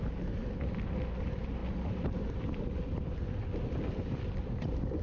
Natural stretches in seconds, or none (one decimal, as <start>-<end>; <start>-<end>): 0.0-5.0